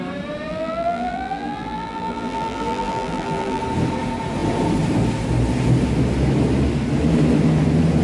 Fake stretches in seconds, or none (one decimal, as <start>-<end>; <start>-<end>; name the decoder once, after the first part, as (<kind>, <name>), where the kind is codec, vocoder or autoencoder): 0.5-3.6 (vocoder, BigVGAN v2)